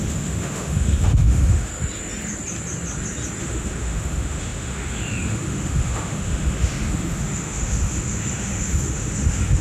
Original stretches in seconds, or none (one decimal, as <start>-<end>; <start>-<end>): 1.7-3.4